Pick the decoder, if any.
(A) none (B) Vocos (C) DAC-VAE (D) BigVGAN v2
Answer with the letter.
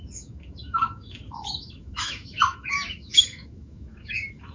C